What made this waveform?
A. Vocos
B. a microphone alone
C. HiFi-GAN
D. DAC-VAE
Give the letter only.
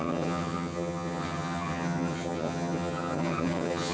C